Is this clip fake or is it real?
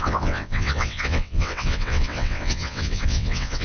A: fake